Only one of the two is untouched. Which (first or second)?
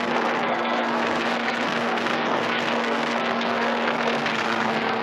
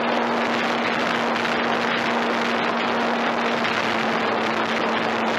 second